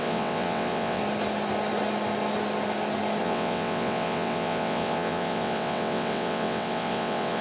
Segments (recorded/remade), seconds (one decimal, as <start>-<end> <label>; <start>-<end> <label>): 0.0-1.0 remade; 1.0-3.2 recorded; 3.2-7.4 remade